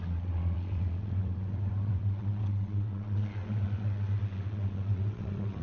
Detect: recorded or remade remade